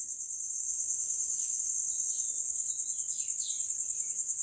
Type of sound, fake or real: real